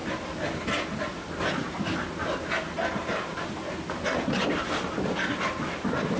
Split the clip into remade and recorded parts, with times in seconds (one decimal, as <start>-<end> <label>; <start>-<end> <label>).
0.0-6.2 recorded